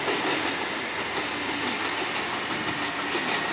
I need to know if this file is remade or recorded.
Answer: recorded